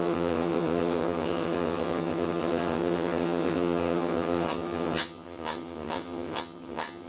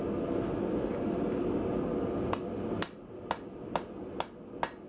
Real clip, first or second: second